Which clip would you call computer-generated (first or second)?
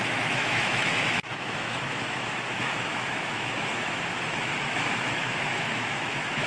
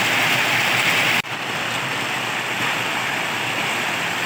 first